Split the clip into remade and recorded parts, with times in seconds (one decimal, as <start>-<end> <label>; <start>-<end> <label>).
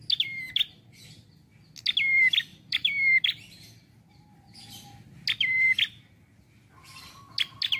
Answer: 0.0-2.5 recorded; 2.5-4.1 remade; 4.1-7.8 recorded